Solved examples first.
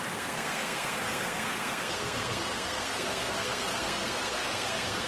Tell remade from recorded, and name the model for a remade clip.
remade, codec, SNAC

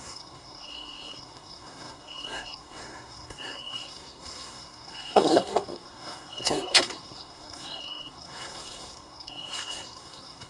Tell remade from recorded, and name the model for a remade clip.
remade, codec, SNAC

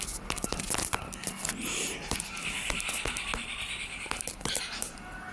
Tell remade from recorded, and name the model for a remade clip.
recorded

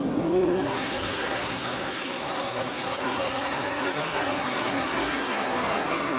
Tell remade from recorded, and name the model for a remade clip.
remade, codec, SNAC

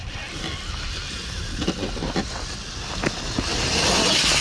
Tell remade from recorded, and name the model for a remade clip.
recorded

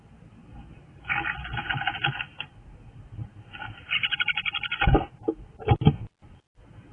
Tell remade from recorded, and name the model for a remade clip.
recorded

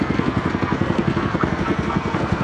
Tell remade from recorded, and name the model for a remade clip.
remade, codec, SNAC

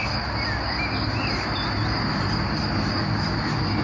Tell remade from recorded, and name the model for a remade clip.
recorded